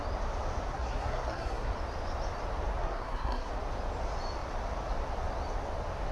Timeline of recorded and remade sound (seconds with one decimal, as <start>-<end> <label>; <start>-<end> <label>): 0.0-0.7 recorded; 0.7-1.7 remade; 1.7-2.8 recorded; 2.8-3.5 remade; 3.5-6.1 recorded